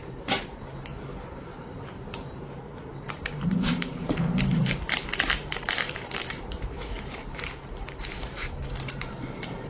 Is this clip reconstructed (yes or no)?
yes